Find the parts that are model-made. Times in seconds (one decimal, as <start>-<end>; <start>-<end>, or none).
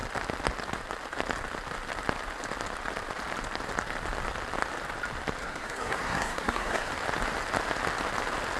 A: 5.4-6.9